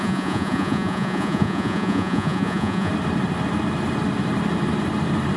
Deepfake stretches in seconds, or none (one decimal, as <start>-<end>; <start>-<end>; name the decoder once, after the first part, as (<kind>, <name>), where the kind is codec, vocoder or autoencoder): 0.0-2.9 (vocoder, Vocos)